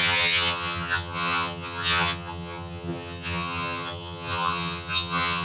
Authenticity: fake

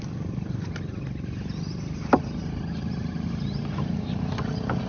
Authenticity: real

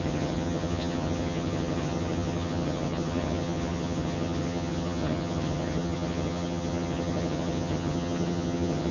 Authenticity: fake